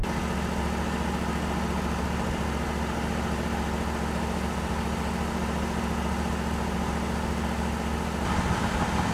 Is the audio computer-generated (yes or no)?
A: no